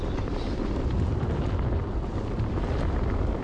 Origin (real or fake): real